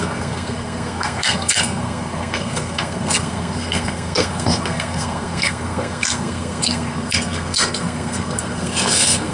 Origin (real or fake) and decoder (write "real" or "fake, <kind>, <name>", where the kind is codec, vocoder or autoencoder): fake, codec, SNAC